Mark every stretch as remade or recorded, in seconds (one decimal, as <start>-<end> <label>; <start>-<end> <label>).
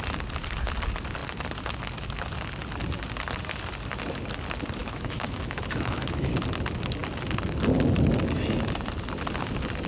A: 0.0-4.8 recorded; 4.8-6.3 remade; 6.3-9.9 recorded